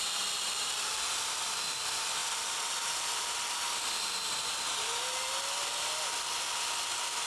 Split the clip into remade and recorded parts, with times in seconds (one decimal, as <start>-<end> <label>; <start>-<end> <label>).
0.0-1.1 remade; 1.1-7.3 recorded